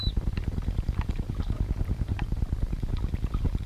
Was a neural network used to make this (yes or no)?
yes